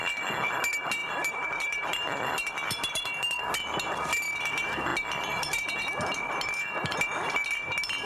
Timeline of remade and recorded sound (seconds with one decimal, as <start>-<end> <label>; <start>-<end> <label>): 0.0-1.0 recorded; 1.0-3.4 remade; 3.4-4.9 recorded; 4.9-5.8 remade; 5.8-8.1 recorded